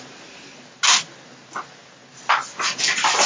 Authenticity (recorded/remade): recorded